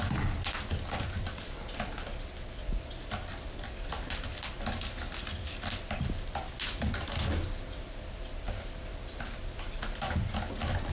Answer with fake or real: real